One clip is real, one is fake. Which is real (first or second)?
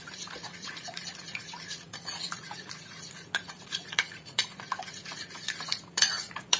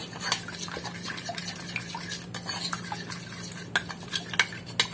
second